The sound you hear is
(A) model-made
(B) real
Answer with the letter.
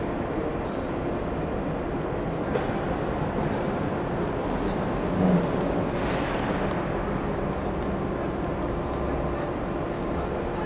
B